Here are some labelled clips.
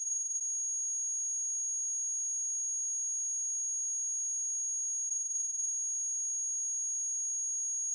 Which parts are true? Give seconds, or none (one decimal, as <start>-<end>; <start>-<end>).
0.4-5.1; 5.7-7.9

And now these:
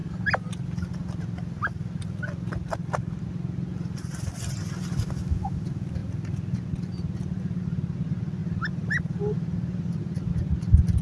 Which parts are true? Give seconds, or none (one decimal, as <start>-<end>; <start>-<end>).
0.0-11.0

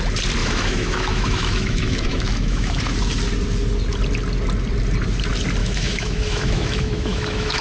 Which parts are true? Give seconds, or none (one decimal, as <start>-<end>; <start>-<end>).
0.0-0.4; 2.8-5.6

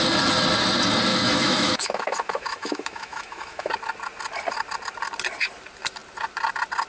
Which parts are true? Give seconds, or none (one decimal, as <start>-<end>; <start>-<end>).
0.0-1.1; 3.7-6.9